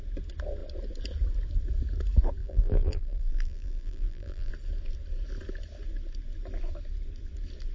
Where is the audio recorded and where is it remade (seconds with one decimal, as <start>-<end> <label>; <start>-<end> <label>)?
0.0-2.4 recorded; 2.4-4.5 remade; 4.5-7.7 recorded